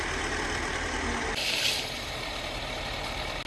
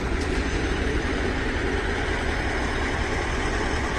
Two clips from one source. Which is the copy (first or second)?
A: second